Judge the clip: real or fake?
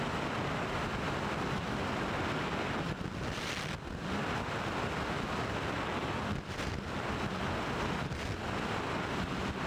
real